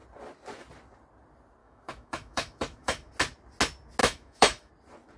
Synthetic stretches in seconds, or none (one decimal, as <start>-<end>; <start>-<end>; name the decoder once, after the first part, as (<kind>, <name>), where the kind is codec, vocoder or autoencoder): 1.6-3.1 (autoencoder, DAC-VAE); 4.0-4.7